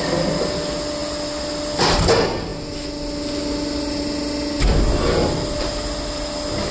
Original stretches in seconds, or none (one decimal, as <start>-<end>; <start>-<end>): 0.0-6.7